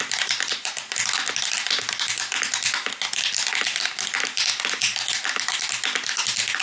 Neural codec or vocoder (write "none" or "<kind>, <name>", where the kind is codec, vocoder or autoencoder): none